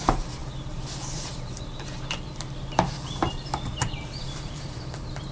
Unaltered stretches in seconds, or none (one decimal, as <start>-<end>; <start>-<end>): none